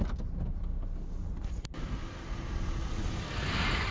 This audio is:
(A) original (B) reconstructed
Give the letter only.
A